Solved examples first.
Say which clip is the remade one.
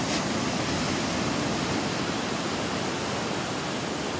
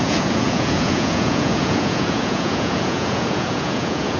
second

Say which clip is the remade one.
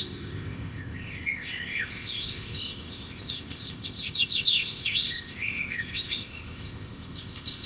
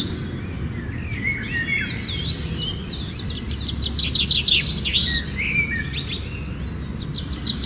first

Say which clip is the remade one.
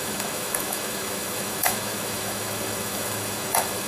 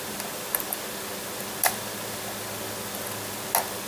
first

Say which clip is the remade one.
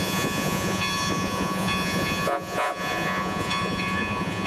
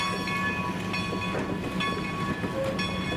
first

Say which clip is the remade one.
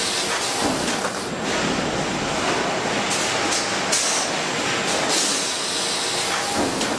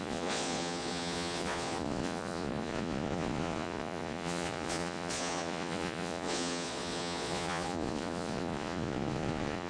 second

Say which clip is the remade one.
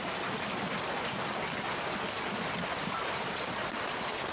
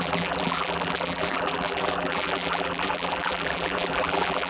second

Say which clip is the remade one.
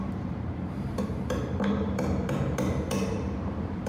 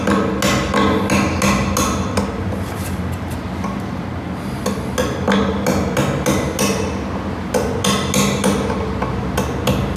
first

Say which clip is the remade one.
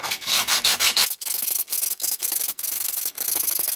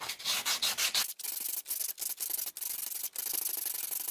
first